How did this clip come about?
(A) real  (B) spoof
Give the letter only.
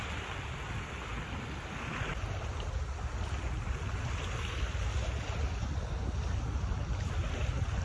A